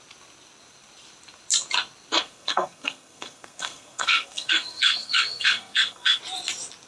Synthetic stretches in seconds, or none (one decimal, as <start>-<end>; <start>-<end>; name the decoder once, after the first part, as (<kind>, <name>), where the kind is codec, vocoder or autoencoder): 2.1-6.2 (codec, SNAC)